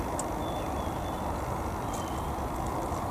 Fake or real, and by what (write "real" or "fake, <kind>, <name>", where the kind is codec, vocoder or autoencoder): real